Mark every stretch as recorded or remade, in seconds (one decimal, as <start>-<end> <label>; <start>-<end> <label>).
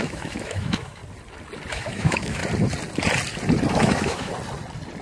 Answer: 0.0-1.0 remade; 1.0-1.7 recorded; 1.7-2.4 remade; 2.4-3.7 recorded; 3.7-4.3 remade; 4.3-5.0 recorded